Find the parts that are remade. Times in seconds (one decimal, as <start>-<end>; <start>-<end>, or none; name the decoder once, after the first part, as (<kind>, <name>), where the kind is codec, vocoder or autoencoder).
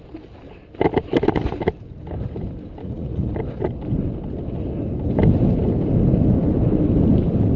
2.8-3.3 (vocoder, Vocos)